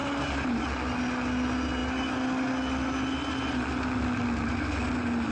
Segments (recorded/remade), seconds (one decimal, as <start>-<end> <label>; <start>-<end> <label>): 0.0-5.3 recorded